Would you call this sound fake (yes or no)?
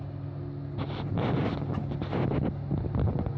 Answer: no